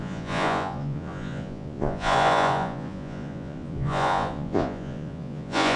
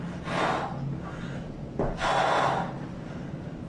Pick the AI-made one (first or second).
first